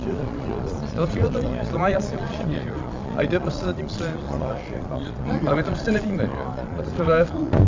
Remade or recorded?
remade